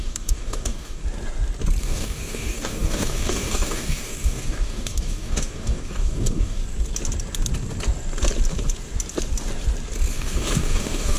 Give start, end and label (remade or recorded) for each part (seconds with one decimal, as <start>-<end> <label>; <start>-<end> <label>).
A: 0.0-1.0 remade; 1.0-1.8 recorded; 1.8-6.6 remade; 6.6-10.1 recorded; 10.1-11.2 remade